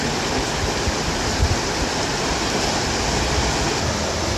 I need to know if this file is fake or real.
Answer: real